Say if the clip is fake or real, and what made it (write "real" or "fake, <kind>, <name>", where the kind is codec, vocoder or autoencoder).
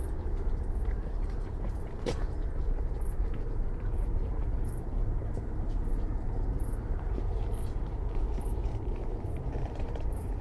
fake, vocoder, BigVGAN v2